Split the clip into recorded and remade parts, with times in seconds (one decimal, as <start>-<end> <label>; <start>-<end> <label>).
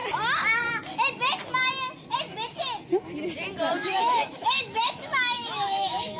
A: 0.0-3.7 recorded; 3.7-6.2 remade